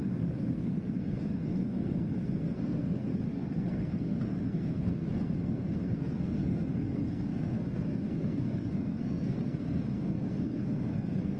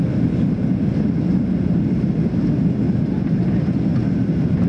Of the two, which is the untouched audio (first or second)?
second